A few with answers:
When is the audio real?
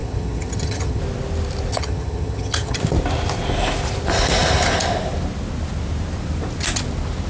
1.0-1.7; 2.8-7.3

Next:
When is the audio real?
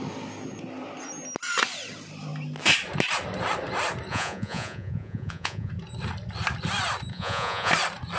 0.0-4.1; 5.7-7.1; 7.7-8.2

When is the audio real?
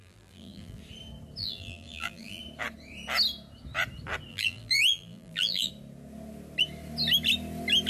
0.8-1.4; 2.4-4.3; 5.7-7.9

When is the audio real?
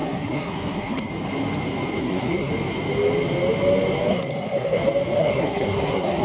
1.1-2.0; 2.5-4.1; 4.8-5.2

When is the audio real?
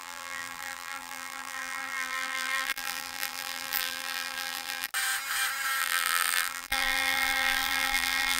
4.9-5.8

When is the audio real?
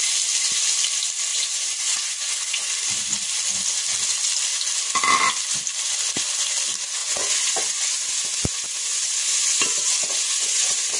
0.0-1.3; 2.7-7.0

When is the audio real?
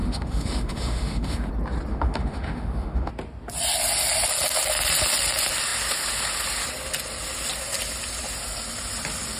1.5-1.9; 3.1-9.4